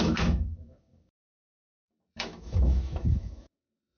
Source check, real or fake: fake